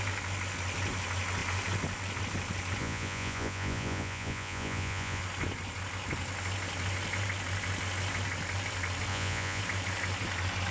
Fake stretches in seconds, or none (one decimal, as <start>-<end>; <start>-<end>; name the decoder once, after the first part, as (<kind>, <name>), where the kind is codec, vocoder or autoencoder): 2.8-5.2 (vocoder, Vocos); 9.1-9.6